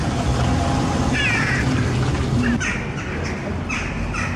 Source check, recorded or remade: recorded